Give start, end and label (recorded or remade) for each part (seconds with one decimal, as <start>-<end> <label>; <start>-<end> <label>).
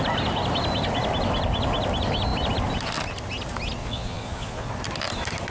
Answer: 0.0-3.8 recorded; 3.8-4.7 remade; 4.7-5.5 recorded